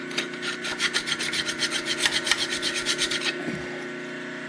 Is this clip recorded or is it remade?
recorded